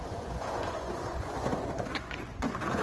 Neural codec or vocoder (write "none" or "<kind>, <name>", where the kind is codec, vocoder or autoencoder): vocoder, Vocos